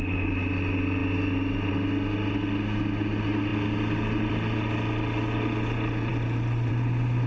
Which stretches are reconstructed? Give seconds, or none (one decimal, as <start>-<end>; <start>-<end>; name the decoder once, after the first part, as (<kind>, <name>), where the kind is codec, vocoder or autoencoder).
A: none

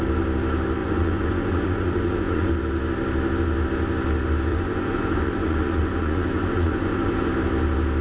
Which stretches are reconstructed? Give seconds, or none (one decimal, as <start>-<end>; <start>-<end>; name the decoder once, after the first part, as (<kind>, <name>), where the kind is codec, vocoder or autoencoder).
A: 0.8-2.5 (vocoder, Vocos); 4.5-7.3

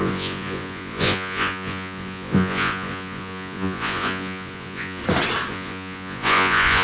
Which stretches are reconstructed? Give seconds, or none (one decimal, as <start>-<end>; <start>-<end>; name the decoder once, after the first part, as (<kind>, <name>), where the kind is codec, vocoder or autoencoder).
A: 0.0-5.0 (vocoder, Vocos); 5.5-6.8

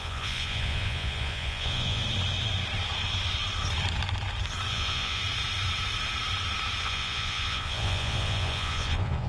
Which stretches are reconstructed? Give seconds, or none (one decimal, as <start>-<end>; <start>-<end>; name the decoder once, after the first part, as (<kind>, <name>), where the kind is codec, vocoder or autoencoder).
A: 0.0-2.0 (vocoder, Vocos); 4.7-5.2; 6.8-9.3

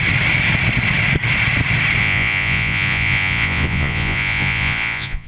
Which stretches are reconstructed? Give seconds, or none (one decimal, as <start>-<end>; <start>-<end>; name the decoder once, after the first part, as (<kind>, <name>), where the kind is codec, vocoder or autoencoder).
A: 2.0-5.3 (vocoder, Vocos)

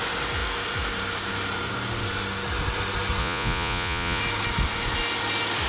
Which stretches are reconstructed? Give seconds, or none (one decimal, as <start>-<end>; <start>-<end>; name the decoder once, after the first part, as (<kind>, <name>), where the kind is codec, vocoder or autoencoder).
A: 3.2-4.2 (vocoder, Vocos)

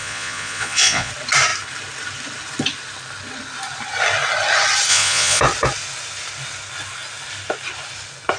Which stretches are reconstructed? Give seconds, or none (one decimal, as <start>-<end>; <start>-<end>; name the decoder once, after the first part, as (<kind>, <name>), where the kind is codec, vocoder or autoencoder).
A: 0.0-1.1 (vocoder, Vocos); 4.9-5.4